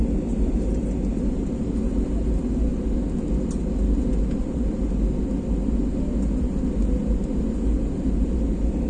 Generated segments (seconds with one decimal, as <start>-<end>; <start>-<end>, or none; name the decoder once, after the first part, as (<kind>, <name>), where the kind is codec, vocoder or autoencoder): none